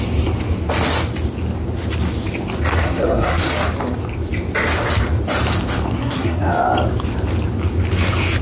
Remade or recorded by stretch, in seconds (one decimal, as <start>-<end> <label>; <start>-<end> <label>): 0.0-2.8 recorded; 2.8-3.5 remade; 3.5-6.0 recorded; 6.0-6.5 remade; 6.5-8.4 recorded